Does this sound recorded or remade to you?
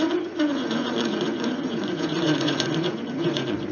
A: remade